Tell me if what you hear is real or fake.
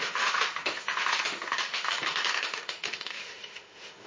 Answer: fake